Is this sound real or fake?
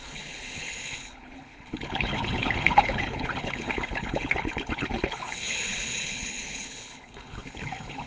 fake